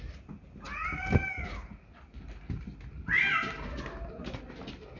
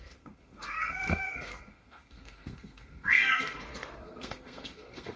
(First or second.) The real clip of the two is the first